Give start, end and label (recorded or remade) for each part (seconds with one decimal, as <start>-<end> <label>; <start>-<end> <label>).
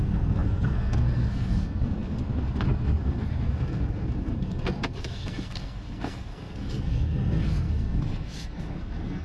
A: 0.0-9.2 remade